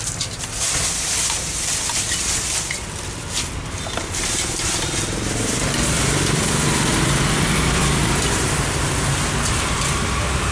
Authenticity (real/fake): fake